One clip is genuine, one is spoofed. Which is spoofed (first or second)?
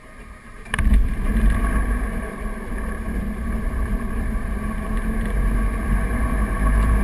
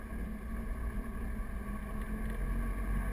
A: first